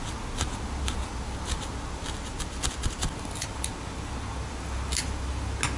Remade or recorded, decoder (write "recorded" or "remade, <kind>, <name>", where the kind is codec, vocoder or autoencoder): recorded